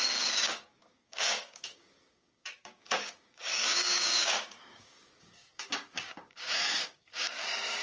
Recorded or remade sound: remade